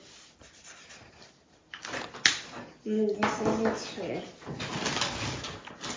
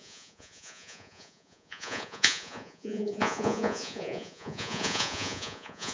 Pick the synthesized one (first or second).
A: second